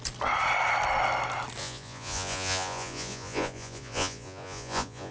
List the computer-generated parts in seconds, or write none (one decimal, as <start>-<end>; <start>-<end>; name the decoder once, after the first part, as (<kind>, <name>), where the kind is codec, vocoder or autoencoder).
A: 1.6-5.1 (vocoder, Vocos)